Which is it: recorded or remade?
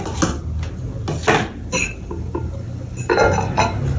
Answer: recorded